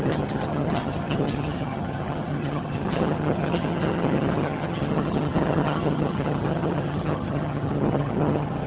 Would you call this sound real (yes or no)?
no